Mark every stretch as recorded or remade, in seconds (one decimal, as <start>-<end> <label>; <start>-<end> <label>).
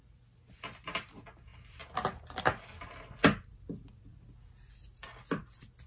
0.0-5.9 recorded